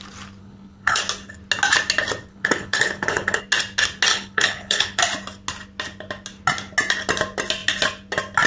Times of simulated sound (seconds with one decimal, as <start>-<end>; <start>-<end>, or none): 0.4-1.0; 2.3-3.4; 4.1-5.0